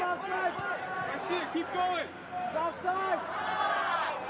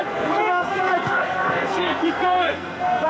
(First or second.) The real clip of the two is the first